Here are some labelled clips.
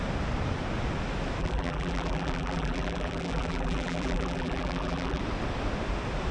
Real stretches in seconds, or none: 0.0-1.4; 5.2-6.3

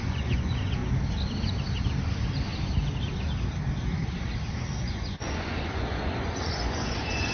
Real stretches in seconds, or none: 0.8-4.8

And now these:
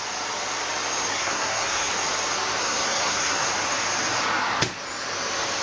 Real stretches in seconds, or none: 0.0-1.1; 1.9-2.6; 3.5-5.6

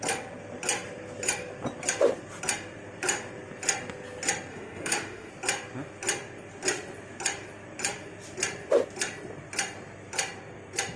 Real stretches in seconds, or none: 0.0-4.5; 5.3-11.0

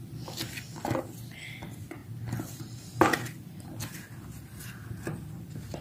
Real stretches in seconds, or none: 0.0-5.8

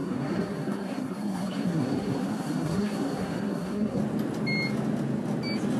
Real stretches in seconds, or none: 4.0-5.8

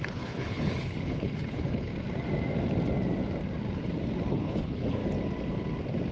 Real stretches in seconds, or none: 1.9-4.3; 5.0-6.1